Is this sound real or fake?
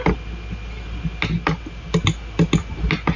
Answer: real